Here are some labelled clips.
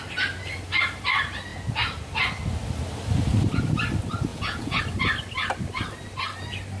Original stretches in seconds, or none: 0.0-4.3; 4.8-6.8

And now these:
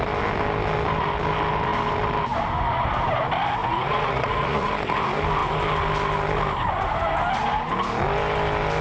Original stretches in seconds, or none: 0.0-3.6; 4.7-8.8

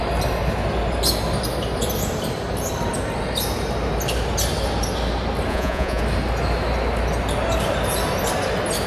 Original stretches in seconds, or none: 0.0-5.5; 6.0-8.9

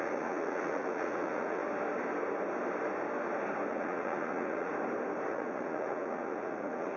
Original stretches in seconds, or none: 1.6-3.7; 4.7-5.3

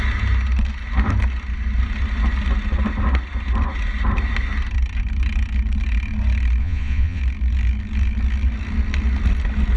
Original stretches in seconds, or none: 0.0-6.6; 7.2-9.8